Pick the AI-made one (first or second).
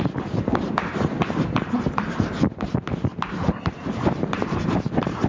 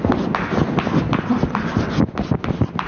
first